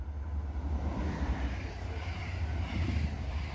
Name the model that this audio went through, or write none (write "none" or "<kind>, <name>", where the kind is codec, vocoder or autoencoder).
none